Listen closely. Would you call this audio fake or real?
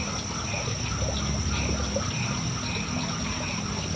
real